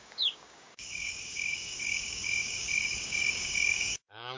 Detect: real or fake fake